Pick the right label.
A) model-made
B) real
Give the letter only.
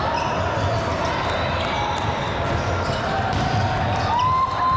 B